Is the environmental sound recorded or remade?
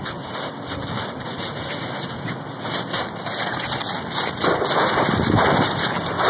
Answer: recorded